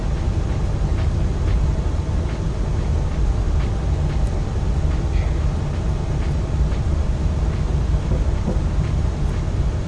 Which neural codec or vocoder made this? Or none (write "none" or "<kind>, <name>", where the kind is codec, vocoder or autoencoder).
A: none